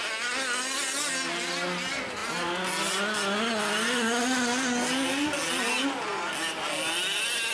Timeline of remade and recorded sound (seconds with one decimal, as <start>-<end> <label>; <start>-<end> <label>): 0.0-7.5 recorded